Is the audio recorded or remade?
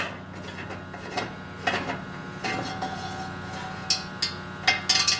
recorded